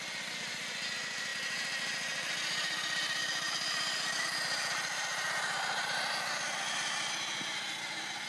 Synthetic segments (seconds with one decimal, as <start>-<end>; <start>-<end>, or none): none